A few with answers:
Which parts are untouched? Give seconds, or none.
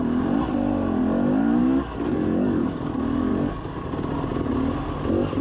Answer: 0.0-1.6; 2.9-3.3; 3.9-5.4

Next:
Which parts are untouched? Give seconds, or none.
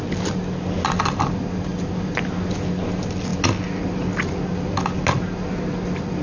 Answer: 0.0-6.2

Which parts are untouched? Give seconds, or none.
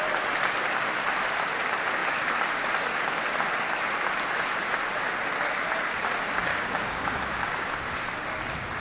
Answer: 0.0-6.5; 7.7-8.8